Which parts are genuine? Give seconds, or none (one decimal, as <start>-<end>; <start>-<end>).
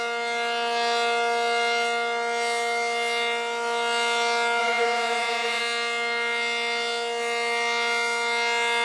0.0-4.6; 5.6-8.8